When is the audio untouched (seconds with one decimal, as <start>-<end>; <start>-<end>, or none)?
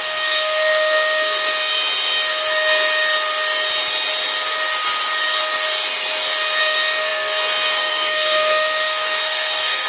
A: 1.7-6.6